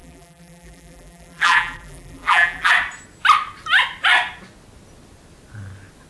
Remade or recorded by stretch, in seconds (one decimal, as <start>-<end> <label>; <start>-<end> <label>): 0.0-2.7 remade; 2.7-6.1 recorded